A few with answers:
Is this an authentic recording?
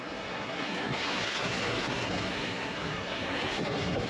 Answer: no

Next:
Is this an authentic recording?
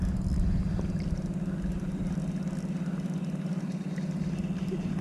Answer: yes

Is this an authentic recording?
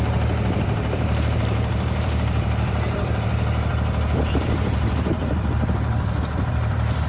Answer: no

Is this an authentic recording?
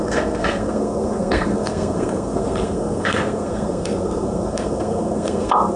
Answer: no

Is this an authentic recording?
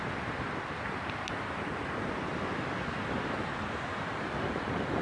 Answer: no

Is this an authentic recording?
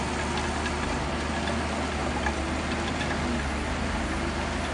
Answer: yes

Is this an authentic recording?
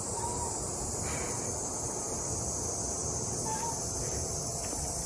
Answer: yes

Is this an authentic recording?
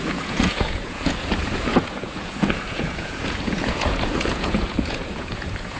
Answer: no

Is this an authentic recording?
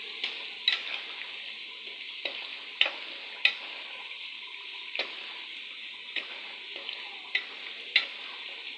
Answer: yes